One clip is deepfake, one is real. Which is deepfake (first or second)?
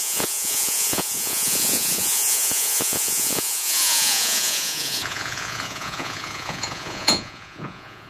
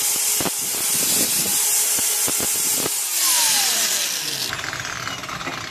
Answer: first